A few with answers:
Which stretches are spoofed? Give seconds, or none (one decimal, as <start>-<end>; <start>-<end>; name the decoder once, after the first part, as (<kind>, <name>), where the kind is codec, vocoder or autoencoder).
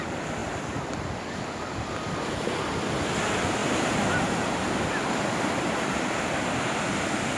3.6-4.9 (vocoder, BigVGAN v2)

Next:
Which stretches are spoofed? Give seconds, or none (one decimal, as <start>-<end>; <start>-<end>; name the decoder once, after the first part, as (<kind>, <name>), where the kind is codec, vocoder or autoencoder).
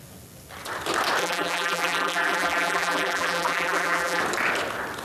1.2-4.2 (vocoder, BigVGAN v2)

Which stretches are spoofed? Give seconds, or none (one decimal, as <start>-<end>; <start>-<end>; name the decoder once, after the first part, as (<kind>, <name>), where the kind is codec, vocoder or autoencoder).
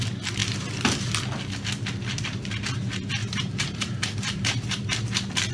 3.2-5.0 (vocoder, BigVGAN v2)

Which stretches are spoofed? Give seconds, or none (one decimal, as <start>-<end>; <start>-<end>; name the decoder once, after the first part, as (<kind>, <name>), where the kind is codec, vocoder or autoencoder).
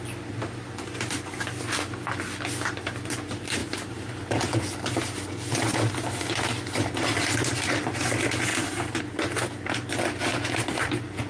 3.6-4.2 (vocoder, BigVGAN v2); 8.5-9.0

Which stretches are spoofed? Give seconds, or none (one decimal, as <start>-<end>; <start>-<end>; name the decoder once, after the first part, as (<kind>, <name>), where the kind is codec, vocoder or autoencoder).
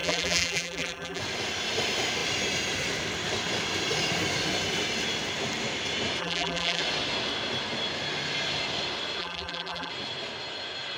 0.0-1.2 (vocoder, BigVGAN v2); 6.2-6.8; 9.2-9.9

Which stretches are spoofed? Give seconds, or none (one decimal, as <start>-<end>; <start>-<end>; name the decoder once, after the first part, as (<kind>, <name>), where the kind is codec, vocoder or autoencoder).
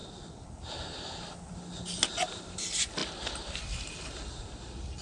none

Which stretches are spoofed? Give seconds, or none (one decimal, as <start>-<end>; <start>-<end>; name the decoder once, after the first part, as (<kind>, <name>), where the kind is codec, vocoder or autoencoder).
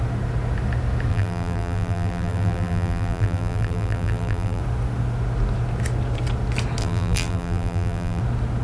1.1-4.6 (vocoder, BigVGAN v2); 6.8-8.2